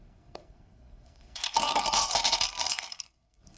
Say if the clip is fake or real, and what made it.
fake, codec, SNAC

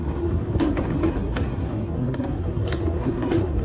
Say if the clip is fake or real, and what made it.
fake, codec, SNAC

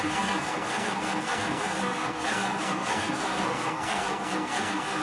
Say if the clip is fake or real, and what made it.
fake, codec, SNAC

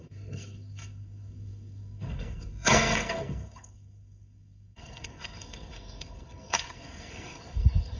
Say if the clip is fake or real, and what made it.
fake, codec, SNAC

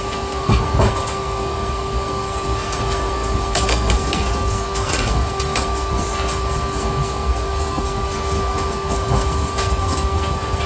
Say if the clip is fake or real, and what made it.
fake, codec, SNAC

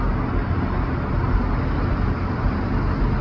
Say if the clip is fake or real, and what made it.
real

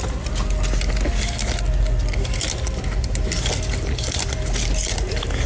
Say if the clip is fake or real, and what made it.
real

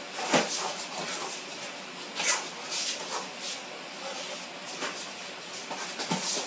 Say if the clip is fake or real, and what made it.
real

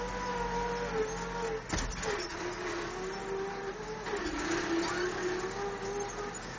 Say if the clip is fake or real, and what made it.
real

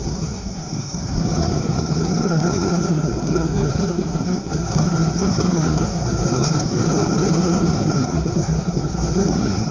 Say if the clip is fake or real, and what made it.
fake, codec, SNAC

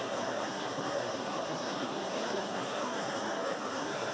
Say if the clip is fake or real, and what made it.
fake, codec, SNAC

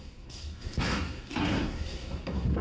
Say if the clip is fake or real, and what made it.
fake, codec, SNAC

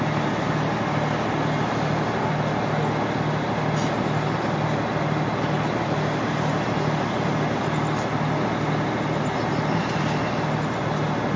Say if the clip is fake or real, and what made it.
real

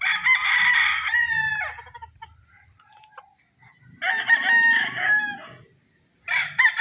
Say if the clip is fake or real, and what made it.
real